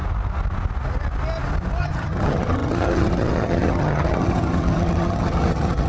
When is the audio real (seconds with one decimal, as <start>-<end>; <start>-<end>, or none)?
0.0-1.8